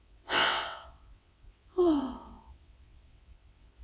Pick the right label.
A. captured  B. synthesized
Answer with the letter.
B